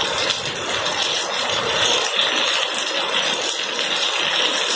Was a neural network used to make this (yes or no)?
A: no